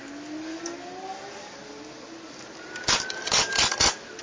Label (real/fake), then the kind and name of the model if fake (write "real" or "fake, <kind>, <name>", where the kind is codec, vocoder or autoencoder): real